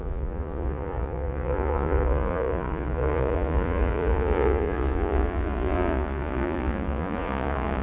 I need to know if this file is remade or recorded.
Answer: remade